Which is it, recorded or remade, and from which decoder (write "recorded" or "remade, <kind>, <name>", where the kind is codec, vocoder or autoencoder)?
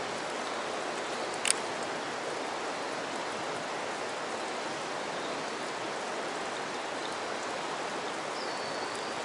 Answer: recorded